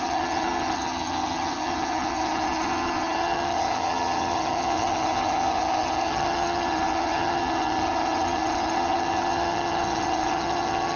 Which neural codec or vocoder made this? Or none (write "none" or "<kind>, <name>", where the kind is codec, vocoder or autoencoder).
vocoder, HiFi-GAN